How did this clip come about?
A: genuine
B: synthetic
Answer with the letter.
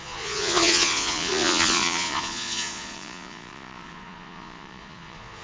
B